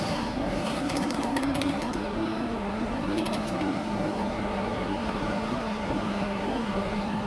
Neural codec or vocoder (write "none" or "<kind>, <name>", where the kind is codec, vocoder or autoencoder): codec, SNAC